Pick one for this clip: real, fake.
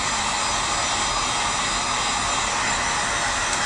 real